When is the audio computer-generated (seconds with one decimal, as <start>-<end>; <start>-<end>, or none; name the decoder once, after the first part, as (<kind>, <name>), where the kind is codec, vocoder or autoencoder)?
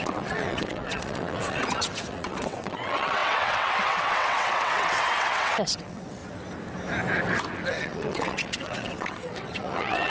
0.0-6.2 (vocoder, WaveNeXt); 7.7-10.1